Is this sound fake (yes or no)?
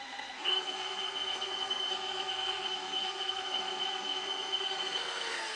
yes